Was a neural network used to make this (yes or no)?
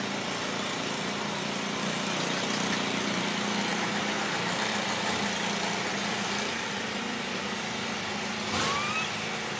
no